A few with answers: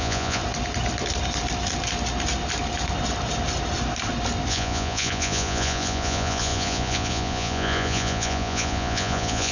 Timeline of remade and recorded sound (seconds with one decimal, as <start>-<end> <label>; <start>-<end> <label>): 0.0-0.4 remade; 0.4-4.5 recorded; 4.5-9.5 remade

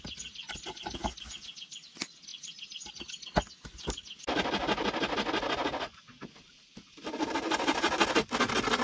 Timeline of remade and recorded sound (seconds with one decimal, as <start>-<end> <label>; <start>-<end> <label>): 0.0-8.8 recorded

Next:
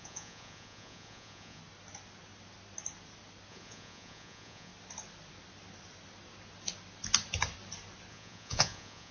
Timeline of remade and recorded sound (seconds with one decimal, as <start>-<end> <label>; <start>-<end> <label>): 0.0-1.6 remade; 1.6-3.5 recorded; 3.5-4.7 remade; 4.7-8.1 recorded; 8.1-9.1 remade

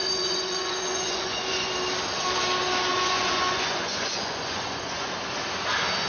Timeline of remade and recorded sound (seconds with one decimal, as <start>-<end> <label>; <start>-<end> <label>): 0.0-1.7 remade; 1.7-2.9 recorded; 2.9-5.1 remade; 5.1-6.1 recorded

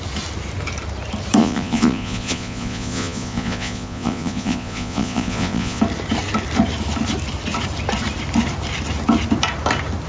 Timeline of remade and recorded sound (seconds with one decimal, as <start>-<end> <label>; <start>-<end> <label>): 0.0-1.4 recorded; 1.4-5.8 remade; 5.8-10.1 recorded

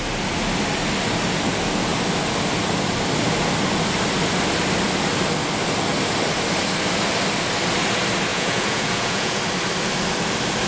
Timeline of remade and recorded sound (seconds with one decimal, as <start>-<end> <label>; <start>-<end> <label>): 0.0-8.3 recorded; 8.3-9.4 remade; 9.4-10.7 recorded